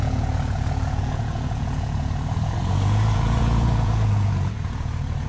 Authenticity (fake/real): fake